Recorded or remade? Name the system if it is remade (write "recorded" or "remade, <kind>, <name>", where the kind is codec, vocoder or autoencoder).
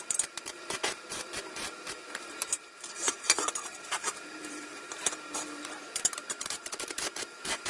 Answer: remade, vocoder, BigVGAN v2